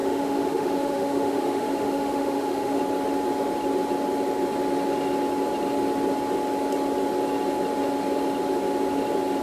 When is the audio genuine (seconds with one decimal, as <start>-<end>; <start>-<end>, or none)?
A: 2.8-9.4